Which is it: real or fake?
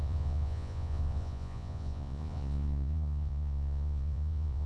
fake